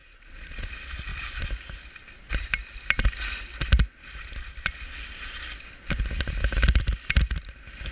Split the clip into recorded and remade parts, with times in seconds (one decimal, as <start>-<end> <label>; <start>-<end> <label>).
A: 0.0-0.7 remade; 0.7-7.9 recorded